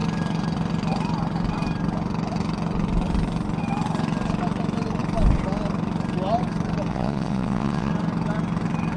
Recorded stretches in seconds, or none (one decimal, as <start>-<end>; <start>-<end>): 0.0-6.9; 7.9-9.0